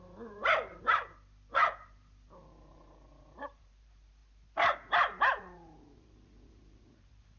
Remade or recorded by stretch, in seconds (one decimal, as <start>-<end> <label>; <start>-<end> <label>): 0.0-1.1 remade; 1.1-2.7 recorded; 2.7-7.4 remade